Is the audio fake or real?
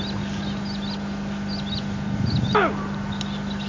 real